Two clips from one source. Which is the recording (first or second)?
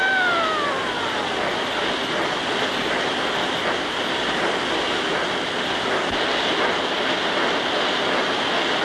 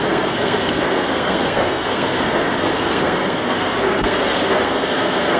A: first